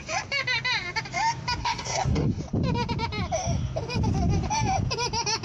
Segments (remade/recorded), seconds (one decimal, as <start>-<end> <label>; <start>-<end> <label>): 0.0-1.6 recorded; 1.6-2.4 remade; 2.4-5.4 recorded